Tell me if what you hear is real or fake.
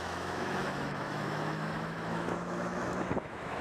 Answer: fake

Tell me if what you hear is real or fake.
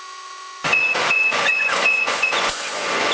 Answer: fake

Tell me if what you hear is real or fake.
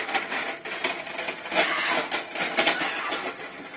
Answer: real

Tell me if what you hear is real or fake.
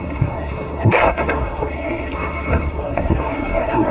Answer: fake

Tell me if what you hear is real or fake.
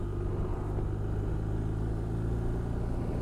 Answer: real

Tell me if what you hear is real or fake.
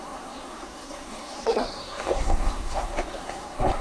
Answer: fake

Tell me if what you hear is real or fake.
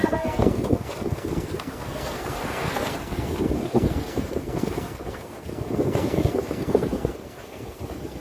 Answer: fake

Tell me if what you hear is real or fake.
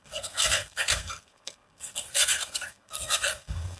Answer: fake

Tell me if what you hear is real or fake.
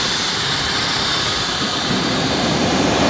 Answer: fake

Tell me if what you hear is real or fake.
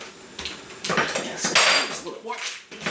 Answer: real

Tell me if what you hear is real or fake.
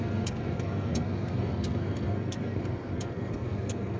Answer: fake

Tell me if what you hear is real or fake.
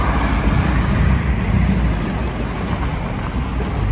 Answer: real